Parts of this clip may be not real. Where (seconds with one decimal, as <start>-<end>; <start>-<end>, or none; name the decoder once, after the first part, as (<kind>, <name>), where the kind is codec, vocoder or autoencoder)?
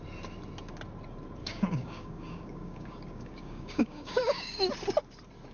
1.4-4.7 (codec, DAC)